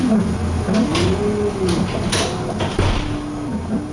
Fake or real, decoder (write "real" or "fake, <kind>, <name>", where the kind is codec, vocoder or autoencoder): real